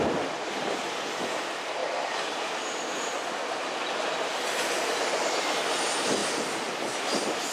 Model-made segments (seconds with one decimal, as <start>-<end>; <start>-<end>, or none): none